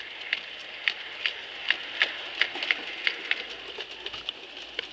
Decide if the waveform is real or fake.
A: real